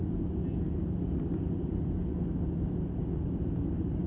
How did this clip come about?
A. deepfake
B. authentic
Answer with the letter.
B